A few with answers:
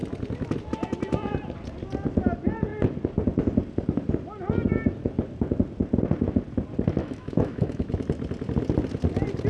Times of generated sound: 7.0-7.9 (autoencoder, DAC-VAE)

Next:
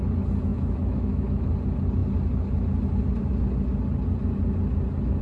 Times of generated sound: 0.5-1.5 (autoencoder, DAC-VAE)

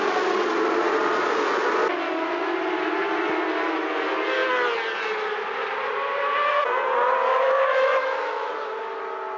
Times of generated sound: 7.3-8.5 (autoencoder, DAC-VAE)

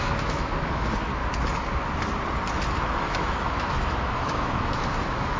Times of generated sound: 0.0-1.1 (autoencoder, DAC-VAE); 2.8-5.4

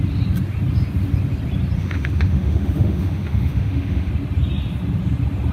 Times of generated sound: 1.8-4.1 (autoencoder, DAC-VAE)